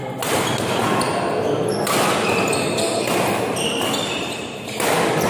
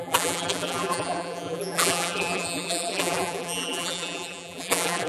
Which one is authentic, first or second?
first